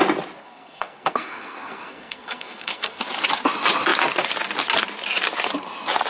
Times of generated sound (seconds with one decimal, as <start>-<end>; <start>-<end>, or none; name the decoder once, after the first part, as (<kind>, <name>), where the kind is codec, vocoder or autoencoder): 0.4-3.0 (codec, SNAC)